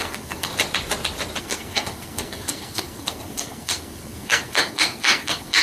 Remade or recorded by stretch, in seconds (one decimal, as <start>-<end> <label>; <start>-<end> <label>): 0.0-0.5 remade; 0.5-1.4 recorded; 1.4-5.6 remade